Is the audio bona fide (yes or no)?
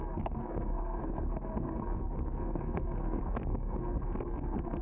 no